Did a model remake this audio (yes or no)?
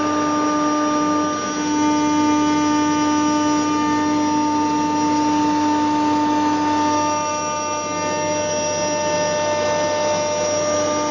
no